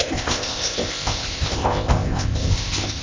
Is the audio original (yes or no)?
no